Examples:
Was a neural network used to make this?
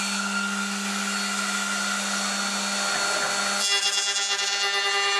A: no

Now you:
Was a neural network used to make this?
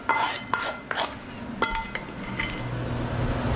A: no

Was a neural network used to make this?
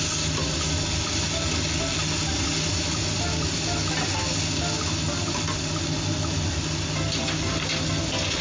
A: no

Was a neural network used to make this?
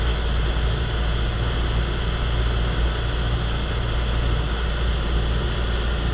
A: no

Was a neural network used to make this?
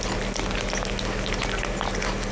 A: no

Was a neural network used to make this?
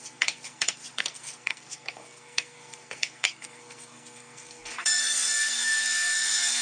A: yes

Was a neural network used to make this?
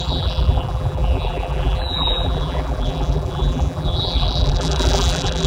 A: yes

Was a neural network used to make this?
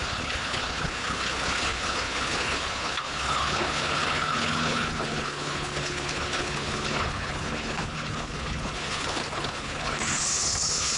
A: yes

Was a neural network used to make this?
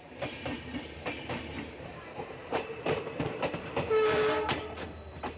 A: yes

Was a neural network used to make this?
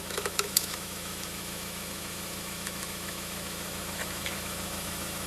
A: yes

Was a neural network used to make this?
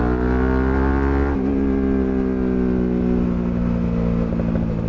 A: no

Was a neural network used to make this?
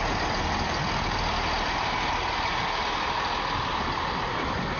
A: no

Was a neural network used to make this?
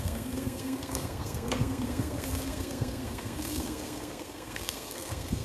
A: yes